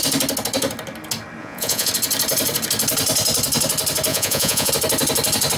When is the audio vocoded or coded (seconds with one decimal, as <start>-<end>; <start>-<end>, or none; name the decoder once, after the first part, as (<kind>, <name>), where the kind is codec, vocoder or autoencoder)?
1.4-1.9 (vocoder, Vocos); 4.1-4.7